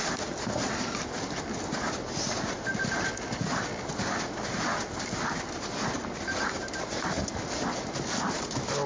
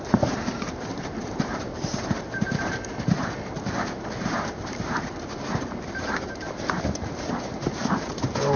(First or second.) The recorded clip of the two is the first